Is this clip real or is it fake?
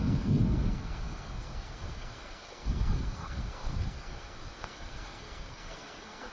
fake